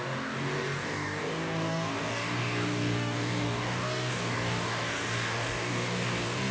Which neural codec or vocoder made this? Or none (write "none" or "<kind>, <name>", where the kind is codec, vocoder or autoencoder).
codec, DAC